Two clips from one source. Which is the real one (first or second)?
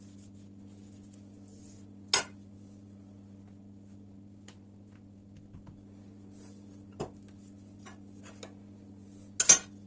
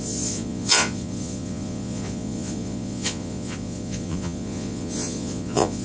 first